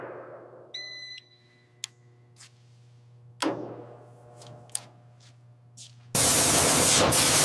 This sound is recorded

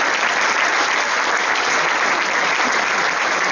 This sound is recorded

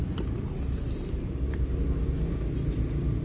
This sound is recorded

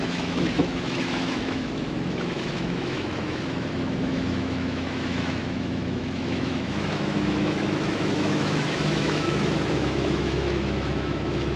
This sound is remade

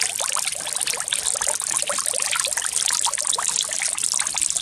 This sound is recorded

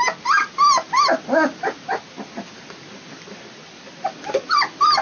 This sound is recorded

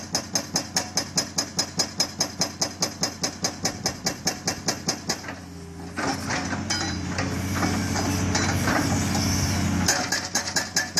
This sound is recorded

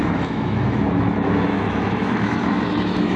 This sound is remade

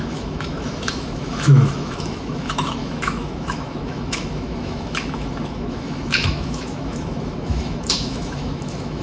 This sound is remade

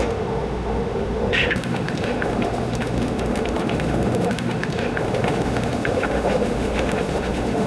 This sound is remade